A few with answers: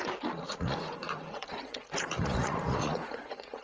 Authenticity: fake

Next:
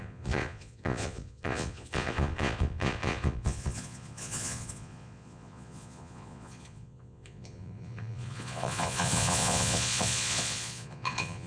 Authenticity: fake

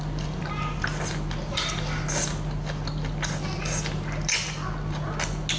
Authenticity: real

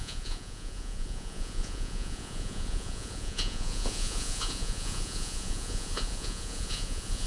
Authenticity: fake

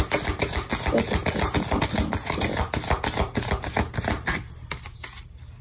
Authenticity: real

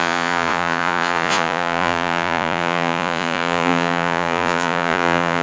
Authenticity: fake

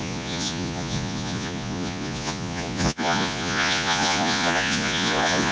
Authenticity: fake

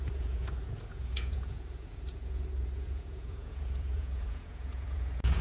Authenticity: fake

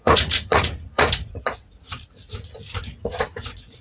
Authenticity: fake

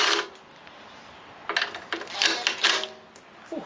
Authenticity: real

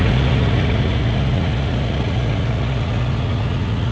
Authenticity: fake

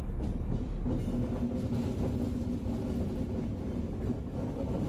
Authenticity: real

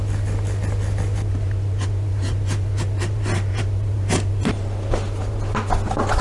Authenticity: real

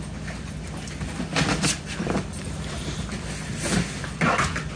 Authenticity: real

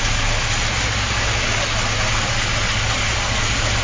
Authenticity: real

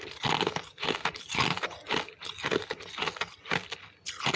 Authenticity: real